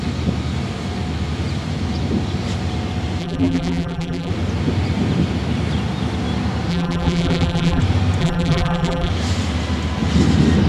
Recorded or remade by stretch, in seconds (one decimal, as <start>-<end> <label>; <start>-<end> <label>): 0.0-3.2 recorded; 3.2-4.3 remade; 4.3-6.7 recorded; 6.7-7.8 remade; 7.8-8.2 recorded; 8.2-9.1 remade; 9.1-10.7 recorded